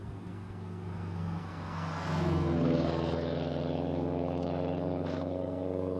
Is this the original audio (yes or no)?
no